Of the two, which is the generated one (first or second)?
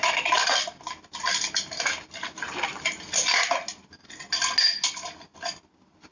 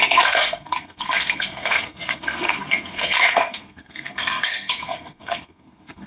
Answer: second